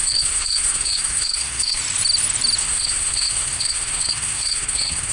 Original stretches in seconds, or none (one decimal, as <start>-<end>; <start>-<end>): 1.8-2.6